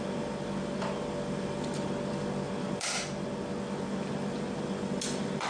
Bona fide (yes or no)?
yes